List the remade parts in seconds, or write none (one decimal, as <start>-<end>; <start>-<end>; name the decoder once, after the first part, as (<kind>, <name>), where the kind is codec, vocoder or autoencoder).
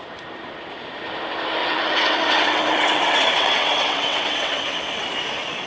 1.6-5.0 (vocoder, WaveNeXt)